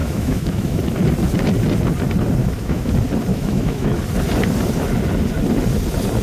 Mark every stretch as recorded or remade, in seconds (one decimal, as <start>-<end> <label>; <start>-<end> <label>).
0.0-0.8 remade; 0.8-2.4 recorded; 2.4-2.9 remade; 2.9-3.3 recorded; 3.3-4.0 remade; 4.0-6.2 recorded